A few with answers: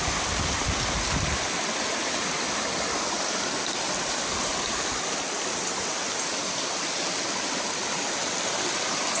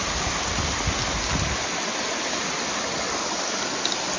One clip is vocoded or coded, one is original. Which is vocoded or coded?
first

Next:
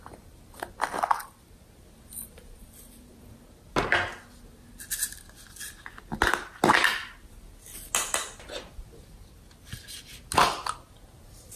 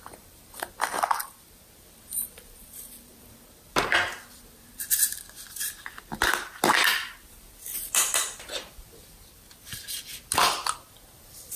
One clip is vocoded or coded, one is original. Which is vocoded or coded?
second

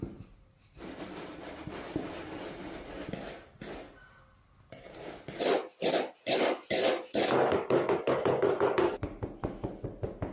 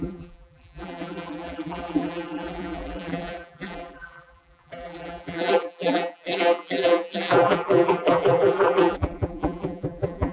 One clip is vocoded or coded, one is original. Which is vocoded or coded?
second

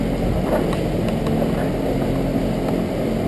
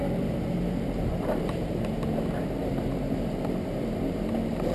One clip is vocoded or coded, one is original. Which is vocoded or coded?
second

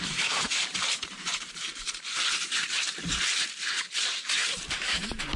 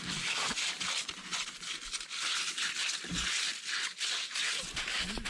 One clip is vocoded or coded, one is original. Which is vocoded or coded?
first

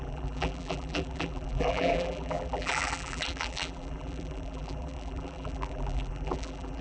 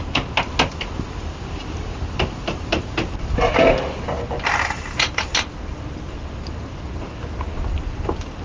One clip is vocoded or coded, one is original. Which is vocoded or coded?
first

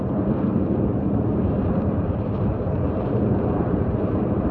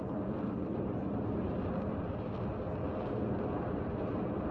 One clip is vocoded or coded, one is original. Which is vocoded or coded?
first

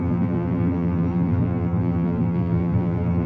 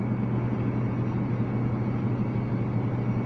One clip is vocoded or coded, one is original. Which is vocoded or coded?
first